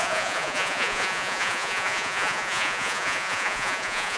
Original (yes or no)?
no